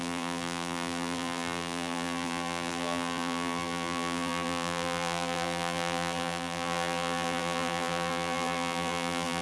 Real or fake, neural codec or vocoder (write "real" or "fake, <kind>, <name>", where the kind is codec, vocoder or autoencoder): fake, vocoder, BigVGAN v2